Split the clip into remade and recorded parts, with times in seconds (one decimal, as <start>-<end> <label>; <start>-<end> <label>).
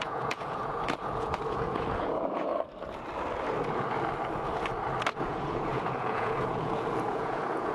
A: 0.0-2.5 remade; 2.5-5.2 recorded; 5.2-7.7 remade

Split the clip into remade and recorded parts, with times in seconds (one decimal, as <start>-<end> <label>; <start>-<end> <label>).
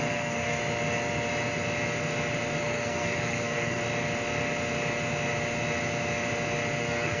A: 0.0-0.6 remade; 0.6-2.6 recorded; 2.6-3.8 remade; 3.8-6.8 recorded; 6.8-7.2 remade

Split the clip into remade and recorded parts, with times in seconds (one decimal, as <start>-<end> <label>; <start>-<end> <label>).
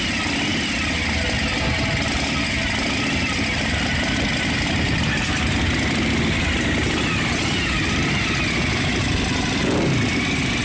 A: 0.0-10.6 recorded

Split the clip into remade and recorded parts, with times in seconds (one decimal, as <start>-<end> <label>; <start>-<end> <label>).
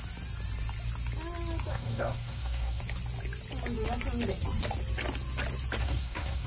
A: 0.0-1.7 recorded; 1.7-2.8 remade; 2.8-5.8 recorded; 5.8-6.5 remade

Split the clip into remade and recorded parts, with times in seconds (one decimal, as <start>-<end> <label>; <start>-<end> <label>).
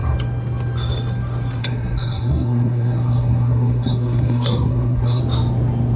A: 0.0-1.6 recorded; 1.6-5.2 remade; 5.2-6.0 recorded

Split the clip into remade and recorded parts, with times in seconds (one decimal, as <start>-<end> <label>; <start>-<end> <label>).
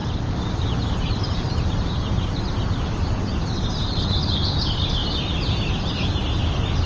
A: 0.0-6.2 remade; 6.2-6.9 recorded